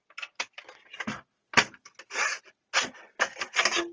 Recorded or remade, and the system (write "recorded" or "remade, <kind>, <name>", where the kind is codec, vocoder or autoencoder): recorded